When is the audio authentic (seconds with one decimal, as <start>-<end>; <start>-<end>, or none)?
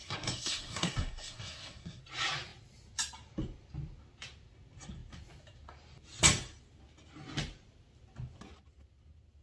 2.0-9.4